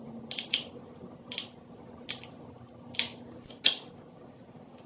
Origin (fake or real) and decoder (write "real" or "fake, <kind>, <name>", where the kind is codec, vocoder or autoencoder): real